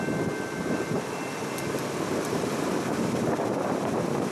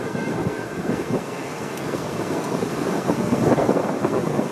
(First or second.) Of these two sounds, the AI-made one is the second